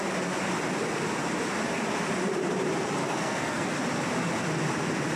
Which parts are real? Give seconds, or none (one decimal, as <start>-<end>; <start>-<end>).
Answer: 0.0-3.0; 3.7-5.2